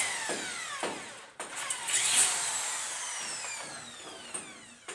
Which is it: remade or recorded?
recorded